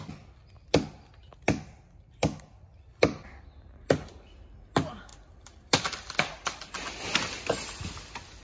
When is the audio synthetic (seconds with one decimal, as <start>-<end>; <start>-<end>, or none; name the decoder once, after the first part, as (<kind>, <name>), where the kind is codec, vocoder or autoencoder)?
none

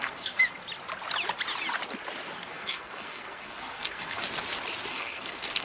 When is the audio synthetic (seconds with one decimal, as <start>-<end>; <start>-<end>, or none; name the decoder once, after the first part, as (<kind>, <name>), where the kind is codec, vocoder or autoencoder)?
0.0-0.4 (codec, SNAC); 2.5-4.2; 4.9-5.6